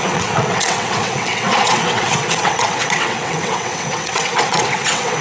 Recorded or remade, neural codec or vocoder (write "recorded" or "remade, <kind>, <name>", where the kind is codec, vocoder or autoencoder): remade, vocoder, WaveNeXt